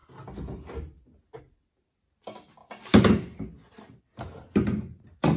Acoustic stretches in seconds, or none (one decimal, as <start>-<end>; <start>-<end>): 0.0-5.4